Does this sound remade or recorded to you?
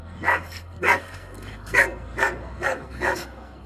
remade